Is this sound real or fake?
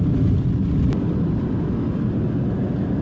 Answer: real